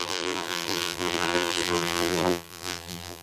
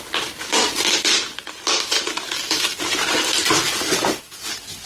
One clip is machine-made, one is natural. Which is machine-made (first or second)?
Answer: first